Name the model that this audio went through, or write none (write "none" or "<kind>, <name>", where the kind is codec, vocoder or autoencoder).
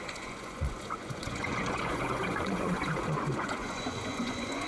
vocoder, Vocos